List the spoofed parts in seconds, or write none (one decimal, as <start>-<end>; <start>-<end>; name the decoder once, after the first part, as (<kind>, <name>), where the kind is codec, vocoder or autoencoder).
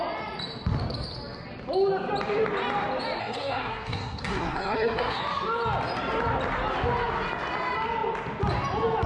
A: 3.2-5.2 (codec, SNAC)